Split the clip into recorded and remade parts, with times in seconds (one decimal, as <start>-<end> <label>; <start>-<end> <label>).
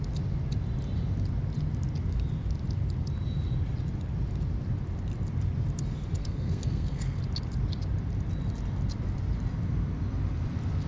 0.0-6.2 recorded; 6.2-7.2 remade; 7.2-10.9 recorded